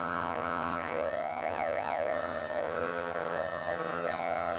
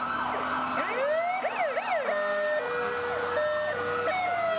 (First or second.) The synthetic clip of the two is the first